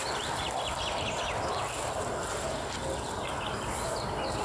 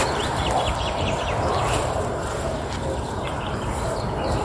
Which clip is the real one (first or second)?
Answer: first